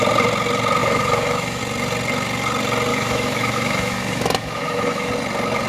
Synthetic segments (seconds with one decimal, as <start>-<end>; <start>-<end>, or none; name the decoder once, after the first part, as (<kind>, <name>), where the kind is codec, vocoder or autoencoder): 0.8-1.6 (autoencoder, DAC-VAE); 2.9-5.1